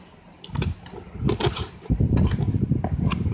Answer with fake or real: real